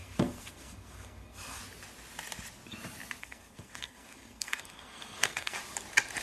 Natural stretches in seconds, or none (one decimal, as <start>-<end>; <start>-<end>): 1.6-3.2; 5.6-6.2